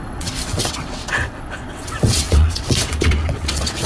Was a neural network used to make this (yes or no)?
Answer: yes